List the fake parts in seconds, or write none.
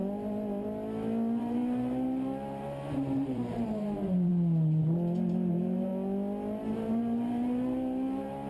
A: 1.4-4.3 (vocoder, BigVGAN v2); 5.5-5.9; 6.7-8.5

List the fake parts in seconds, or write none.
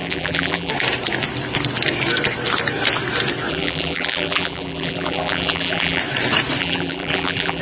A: 0.0-0.7 (vocoder, BigVGAN v2); 3.5-6.0; 6.6-7.6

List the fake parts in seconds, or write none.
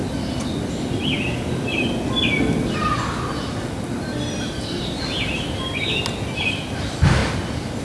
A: none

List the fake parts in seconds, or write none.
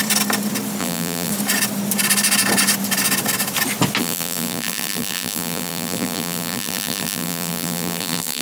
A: 0.8-1.3 (vocoder, BigVGAN v2); 4.0-8.4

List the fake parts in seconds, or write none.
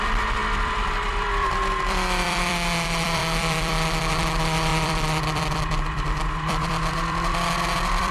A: 0.0-8.1 (vocoder, BigVGAN v2)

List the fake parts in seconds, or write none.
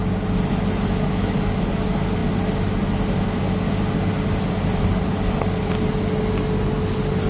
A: none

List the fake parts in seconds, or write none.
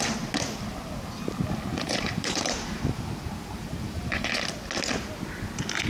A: 1.7-4.3 (vocoder, BigVGAN v2)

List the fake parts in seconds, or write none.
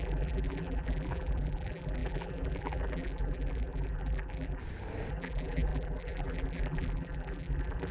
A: 0.0-4.6 (vocoder, BigVGAN v2); 5.1-7.9